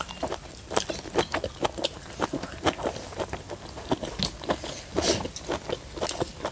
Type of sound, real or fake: real